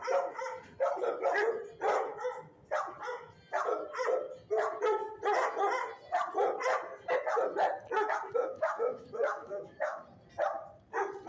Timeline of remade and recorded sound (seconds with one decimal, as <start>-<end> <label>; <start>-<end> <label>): 0.0-8.4 recorded; 8.4-10.0 remade; 10.0-11.3 recorded